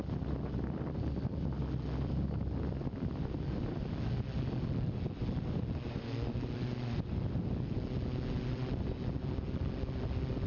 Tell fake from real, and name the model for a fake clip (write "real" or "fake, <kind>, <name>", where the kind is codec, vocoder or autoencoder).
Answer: real